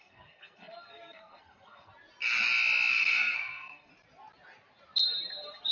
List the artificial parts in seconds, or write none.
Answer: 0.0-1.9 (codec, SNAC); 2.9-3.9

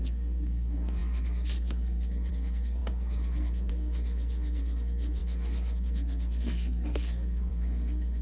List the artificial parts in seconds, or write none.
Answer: 0.0-8.2 (codec, SNAC)